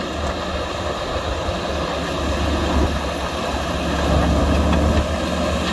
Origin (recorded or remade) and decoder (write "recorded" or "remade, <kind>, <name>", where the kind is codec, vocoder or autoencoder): recorded